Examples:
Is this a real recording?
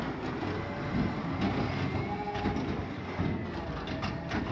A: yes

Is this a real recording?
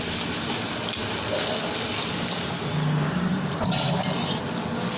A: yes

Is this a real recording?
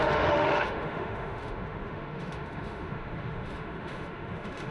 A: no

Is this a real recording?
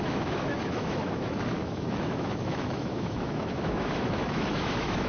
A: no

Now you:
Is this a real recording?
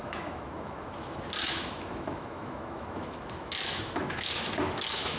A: no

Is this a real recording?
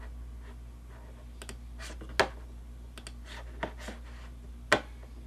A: yes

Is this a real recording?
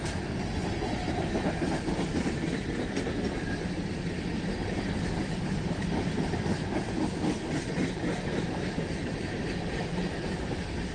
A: yes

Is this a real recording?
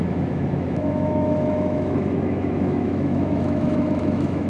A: no